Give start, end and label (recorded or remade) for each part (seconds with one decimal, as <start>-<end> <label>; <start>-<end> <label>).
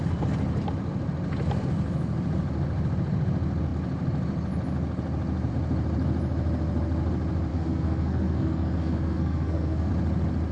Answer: 0.0-7.5 recorded; 7.5-9.9 remade; 9.9-10.5 recorded